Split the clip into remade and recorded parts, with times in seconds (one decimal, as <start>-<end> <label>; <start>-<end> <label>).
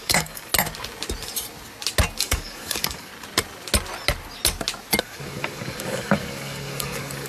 0.0-0.5 remade; 0.5-2.2 recorded; 2.2-3.1 remade; 3.1-5.0 recorded; 5.0-7.3 remade